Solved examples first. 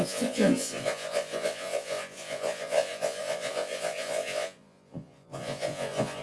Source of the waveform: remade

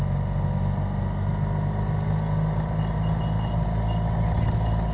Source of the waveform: recorded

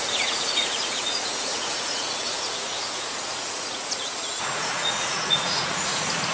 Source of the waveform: remade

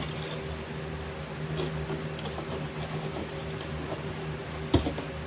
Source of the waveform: recorded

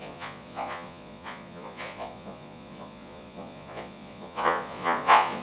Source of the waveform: remade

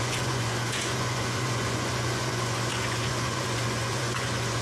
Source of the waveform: remade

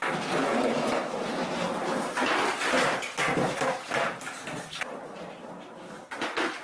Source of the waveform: recorded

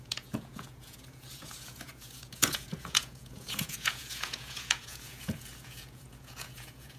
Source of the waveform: remade